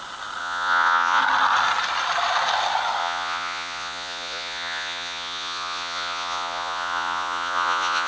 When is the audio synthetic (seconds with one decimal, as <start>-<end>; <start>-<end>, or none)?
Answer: 0.4-1.2; 3.0-8.1